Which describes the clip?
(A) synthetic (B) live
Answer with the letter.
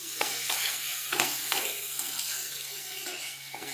A